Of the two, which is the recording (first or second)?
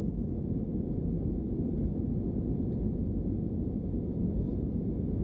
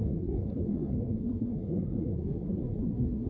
first